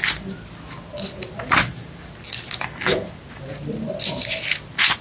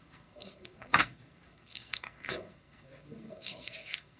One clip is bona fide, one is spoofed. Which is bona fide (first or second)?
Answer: first